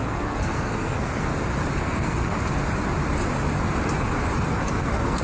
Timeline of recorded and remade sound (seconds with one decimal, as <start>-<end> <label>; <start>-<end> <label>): 0.0-1.3 remade; 1.3-1.8 recorded; 1.8-2.3 remade; 2.3-4.5 recorded; 4.5-5.2 remade